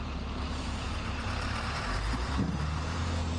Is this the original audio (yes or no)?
no